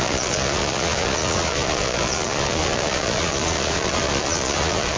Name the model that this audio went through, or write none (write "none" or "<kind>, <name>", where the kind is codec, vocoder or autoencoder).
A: vocoder, Vocos